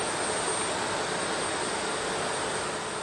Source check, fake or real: real